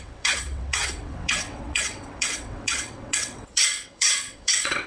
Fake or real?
fake